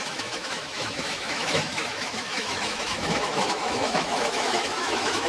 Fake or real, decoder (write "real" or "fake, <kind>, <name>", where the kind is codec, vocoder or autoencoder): fake, autoencoder, DAC-VAE